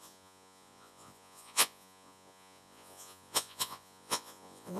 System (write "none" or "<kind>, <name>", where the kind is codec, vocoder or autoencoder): vocoder, Vocos